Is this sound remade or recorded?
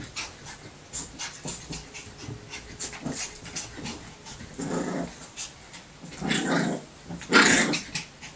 recorded